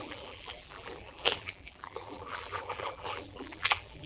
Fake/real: fake